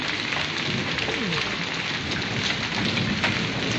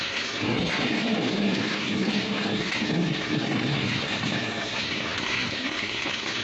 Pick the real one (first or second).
first